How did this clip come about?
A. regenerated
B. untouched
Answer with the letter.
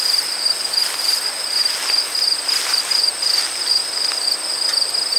B